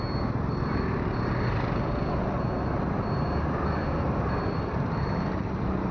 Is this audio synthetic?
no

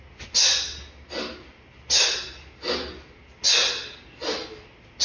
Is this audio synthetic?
no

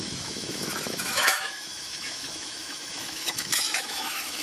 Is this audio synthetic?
yes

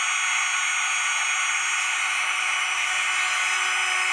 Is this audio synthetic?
no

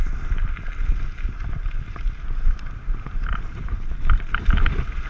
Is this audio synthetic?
no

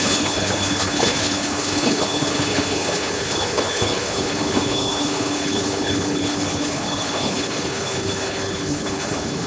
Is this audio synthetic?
yes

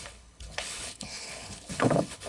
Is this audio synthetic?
yes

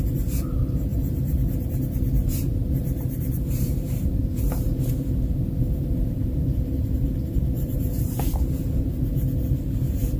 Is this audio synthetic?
yes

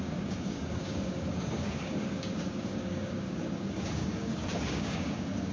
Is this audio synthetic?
yes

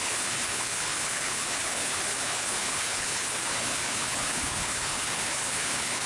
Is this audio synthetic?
yes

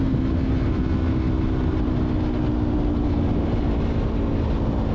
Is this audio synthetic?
no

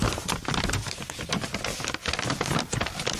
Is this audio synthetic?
no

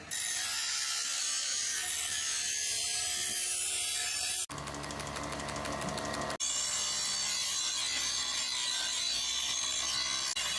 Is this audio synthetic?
no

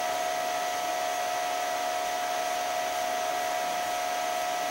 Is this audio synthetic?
no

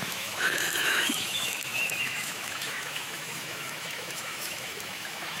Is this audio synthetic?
yes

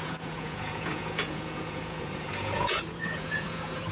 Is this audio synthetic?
yes